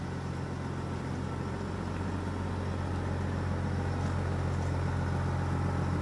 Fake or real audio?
real